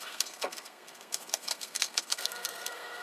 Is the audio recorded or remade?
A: remade